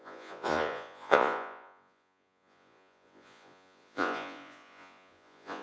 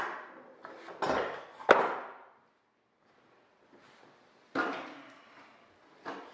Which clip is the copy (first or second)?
first